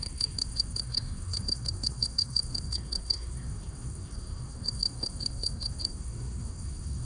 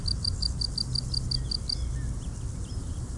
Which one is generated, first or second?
first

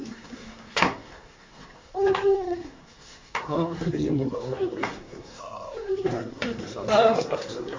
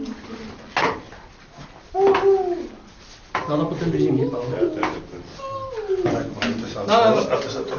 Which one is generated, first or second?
first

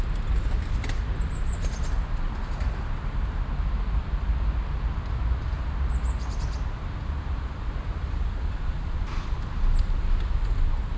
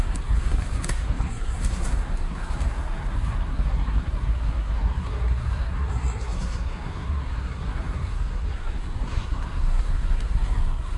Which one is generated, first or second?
second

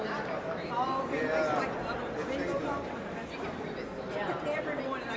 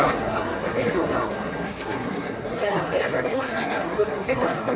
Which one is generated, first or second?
second